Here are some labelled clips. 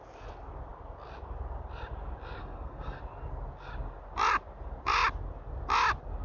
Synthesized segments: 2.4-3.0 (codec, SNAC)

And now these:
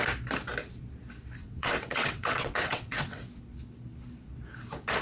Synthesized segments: 1.4-3.2 (vocoder, WaveNeXt)

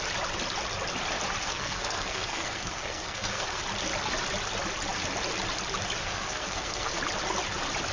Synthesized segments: 1.4-3.6 (codec, SNAC); 6.0-7.0

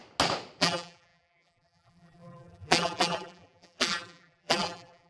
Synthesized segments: 0.6-5.1 (vocoder, BigVGAN v2)

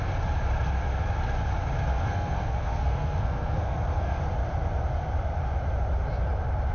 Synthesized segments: 1.9-4.2 (codec, SNAC)

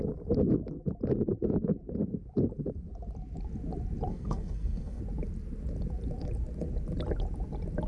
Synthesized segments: 4.1-5.0 (codec, SNAC)

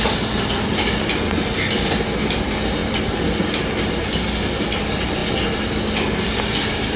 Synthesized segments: none